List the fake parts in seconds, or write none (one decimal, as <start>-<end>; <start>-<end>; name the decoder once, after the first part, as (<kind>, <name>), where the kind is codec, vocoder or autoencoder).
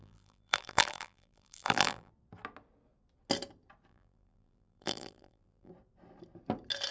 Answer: 0.0-2.1 (vocoder, BigVGAN v2); 3.9-5.7